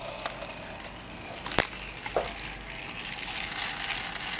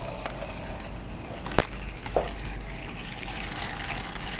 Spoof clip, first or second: second